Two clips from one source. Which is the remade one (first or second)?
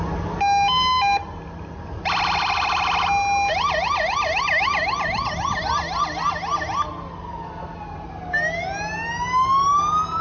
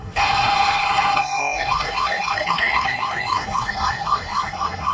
second